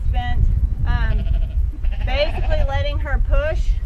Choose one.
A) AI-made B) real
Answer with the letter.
B